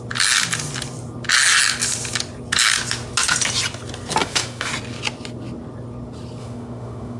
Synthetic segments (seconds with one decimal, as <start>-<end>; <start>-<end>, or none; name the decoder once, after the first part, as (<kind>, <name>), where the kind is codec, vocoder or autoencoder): 4.2-4.7 (autoencoder, DAC-VAE); 6.4-7.2